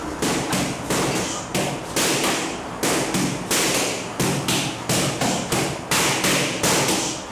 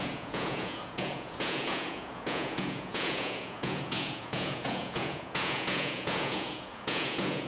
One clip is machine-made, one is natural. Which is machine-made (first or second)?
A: second